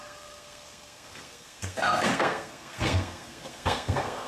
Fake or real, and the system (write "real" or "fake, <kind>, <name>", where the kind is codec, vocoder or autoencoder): fake, codec, SNAC